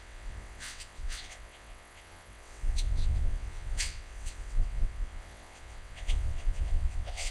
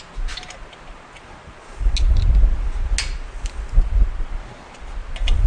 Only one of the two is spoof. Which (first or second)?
first